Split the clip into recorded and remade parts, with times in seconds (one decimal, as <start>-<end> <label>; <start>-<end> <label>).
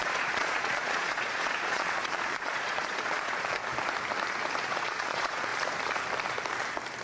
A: 0.0-3.6 remade; 3.6-4.6 recorded; 4.6-5.5 remade; 5.5-7.0 recorded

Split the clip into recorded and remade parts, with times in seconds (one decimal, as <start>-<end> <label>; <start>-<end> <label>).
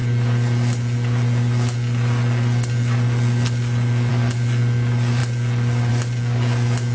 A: 0.0-6.9 recorded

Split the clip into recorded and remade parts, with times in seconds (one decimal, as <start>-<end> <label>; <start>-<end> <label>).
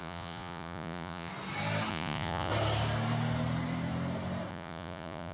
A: 0.0-1.3 remade; 1.3-1.9 recorded; 1.9-2.5 remade; 2.5-4.5 recorded; 4.5-5.3 remade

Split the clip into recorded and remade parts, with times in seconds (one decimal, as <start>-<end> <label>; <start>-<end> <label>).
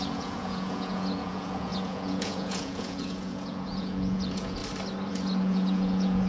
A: 0.0-4.6 remade; 4.6-5.1 recorded; 5.1-6.3 remade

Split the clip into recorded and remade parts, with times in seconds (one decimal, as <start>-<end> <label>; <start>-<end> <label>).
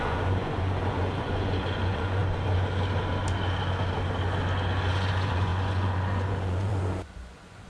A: 0.0-2.2 remade; 2.2-4.9 recorded; 4.9-7.7 remade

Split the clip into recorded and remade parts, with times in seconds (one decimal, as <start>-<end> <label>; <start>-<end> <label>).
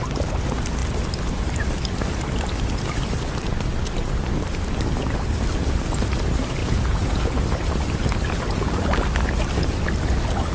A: 0.0-6.6 recorded; 6.6-7.4 remade; 7.4-10.5 recorded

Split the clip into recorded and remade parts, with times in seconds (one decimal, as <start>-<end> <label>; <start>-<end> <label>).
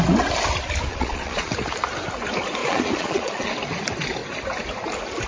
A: 0.0-0.9 recorded; 0.9-1.5 remade; 1.5-2.6 recorded; 2.6-3.5 remade; 3.5-5.3 recorded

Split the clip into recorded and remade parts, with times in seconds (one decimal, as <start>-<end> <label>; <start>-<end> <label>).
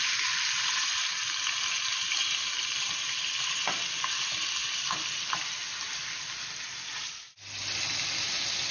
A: 0.0-8.7 recorded